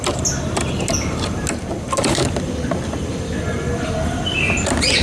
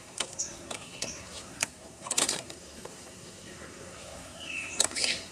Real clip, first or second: first